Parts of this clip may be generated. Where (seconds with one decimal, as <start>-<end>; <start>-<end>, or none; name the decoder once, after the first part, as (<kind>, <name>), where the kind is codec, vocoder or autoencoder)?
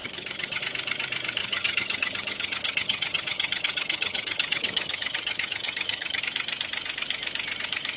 0.0-0.6 (vocoder, HiFi-GAN); 1.4-6.2